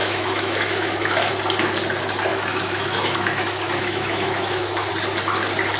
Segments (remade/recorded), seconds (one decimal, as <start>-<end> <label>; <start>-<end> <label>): 0.0-1.3 remade; 1.3-2.3 recorded; 2.3-4.9 remade; 4.9-5.8 recorded

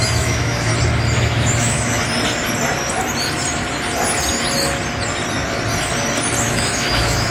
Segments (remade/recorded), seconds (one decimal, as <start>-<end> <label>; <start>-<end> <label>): 0.0-0.7 remade; 0.7-1.2 recorded; 1.2-2.0 remade; 2.0-6.4 recorded; 6.4-7.3 remade

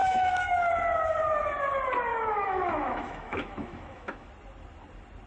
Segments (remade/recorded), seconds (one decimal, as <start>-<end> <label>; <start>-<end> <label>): 0.0-0.7 remade; 0.7-2.1 recorded; 2.1-4.3 remade; 4.3-5.3 recorded

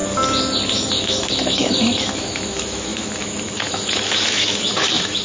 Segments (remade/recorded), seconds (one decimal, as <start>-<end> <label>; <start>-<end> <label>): 0.0-0.9 recorded; 0.9-5.2 remade

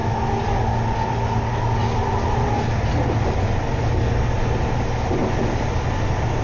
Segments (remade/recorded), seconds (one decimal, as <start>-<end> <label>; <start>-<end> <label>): 0.0-6.4 recorded

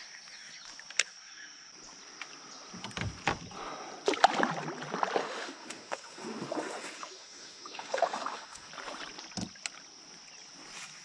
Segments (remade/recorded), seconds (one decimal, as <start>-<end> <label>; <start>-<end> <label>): 0.0-5.2 recorded; 5.2-8.7 remade; 8.7-11.0 recorded